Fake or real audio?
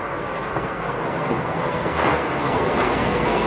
fake